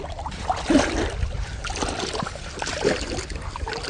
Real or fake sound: real